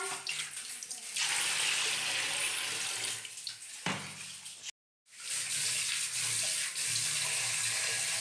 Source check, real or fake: real